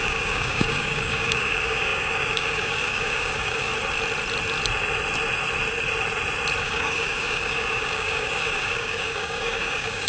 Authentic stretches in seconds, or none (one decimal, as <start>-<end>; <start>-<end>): 3.7-6.6